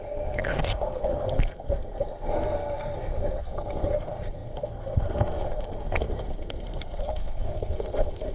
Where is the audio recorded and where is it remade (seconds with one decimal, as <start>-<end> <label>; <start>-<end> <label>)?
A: 0.0-8.3 remade